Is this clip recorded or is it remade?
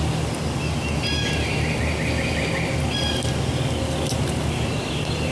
recorded